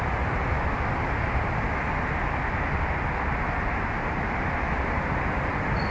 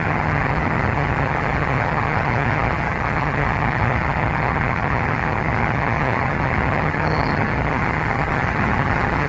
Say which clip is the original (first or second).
first